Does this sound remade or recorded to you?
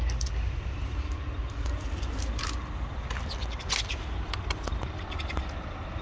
recorded